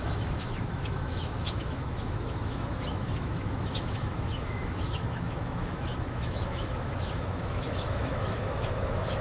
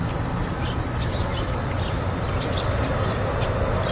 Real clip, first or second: second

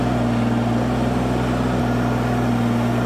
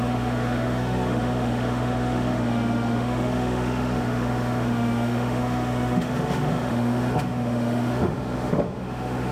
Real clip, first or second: first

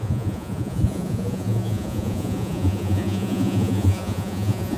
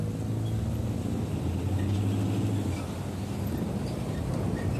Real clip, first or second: second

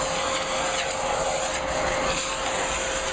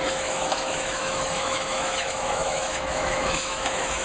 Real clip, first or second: first